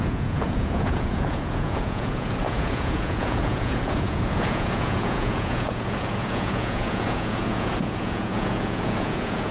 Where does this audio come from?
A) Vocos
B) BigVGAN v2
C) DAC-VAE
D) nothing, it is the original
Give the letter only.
A